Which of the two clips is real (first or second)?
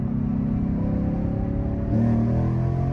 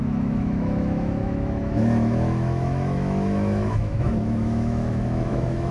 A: first